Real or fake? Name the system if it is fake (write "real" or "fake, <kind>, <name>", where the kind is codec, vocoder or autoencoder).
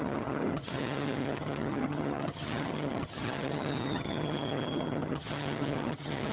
fake, vocoder, HiFi-GAN